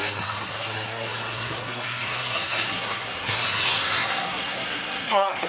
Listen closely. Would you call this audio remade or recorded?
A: remade